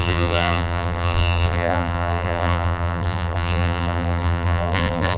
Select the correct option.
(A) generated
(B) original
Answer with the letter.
A